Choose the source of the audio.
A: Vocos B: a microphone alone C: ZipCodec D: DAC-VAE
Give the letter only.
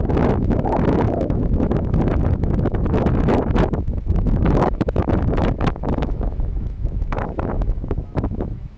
D